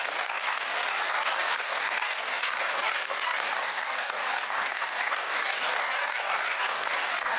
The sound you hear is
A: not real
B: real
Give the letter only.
A